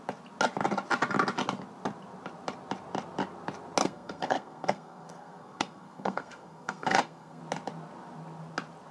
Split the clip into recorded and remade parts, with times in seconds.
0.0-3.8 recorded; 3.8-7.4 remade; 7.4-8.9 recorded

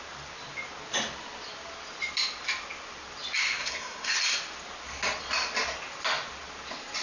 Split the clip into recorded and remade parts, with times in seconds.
0.0-3.6 recorded; 3.6-4.1 remade; 4.1-7.0 recorded

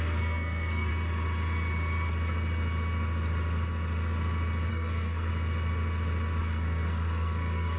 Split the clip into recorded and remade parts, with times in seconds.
0.0-0.9 remade; 0.9-4.7 recorded; 4.7-5.3 remade; 5.3-6.4 recorded; 6.4-7.8 remade

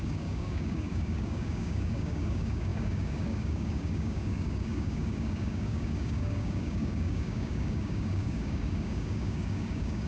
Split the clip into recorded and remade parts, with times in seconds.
0.0-10.1 remade

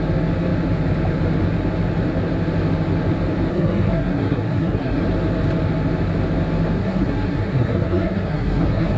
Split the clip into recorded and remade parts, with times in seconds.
0.0-3.5 recorded; 3.5-5.0 remade; 5.0-6.8 recorded; 6.8-9.0 remade

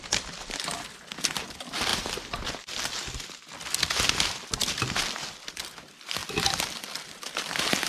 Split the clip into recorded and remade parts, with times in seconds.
0.0-6.2 recorded; 6.2-7.2 remade; 7.2-7.9 recorded

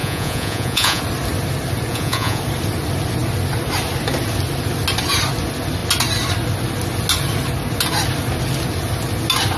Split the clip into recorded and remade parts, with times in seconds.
0.0-1.0 remade; 1.0-1.9 recorded; 1.9-2.4 remade; 2.4-9.6 recorded

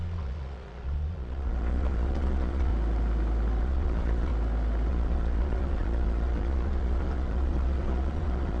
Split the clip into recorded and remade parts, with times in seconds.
0.0-2.7 remade; 2.7-3.6 recorded; 3.6-4.3 remade; 4.3-4.9 recorded; 4.9-8.6 remade